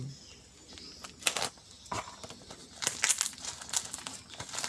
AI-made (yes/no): no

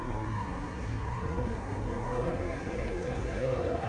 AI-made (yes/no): yes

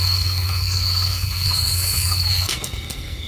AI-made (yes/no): yes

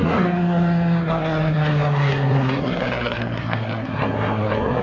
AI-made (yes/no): yes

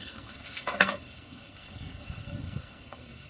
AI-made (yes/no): yes